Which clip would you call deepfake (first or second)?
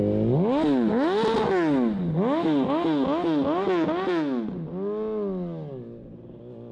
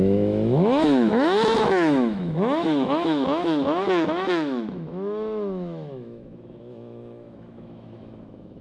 second